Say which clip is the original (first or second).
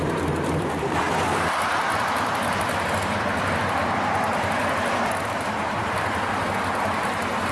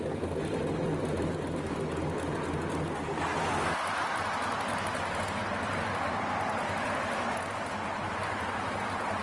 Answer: second